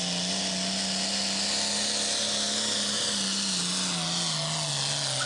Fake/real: real